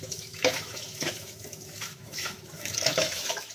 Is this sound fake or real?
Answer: fake